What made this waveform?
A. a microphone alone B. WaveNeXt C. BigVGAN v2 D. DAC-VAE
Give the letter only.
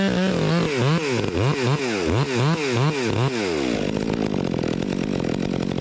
A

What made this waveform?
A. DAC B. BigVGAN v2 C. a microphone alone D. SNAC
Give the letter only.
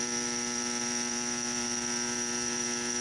B